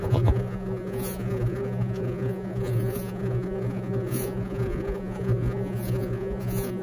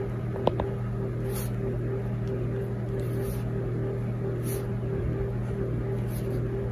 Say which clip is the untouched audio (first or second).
second